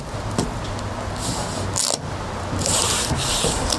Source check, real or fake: real